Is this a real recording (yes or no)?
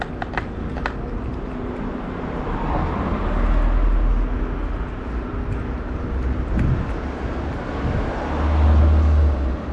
yes